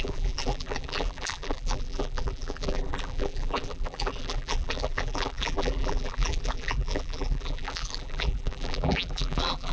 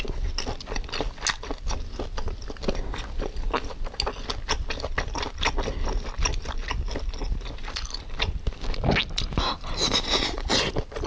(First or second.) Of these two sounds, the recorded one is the second